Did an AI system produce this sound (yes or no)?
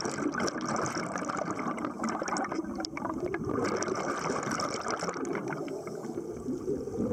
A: no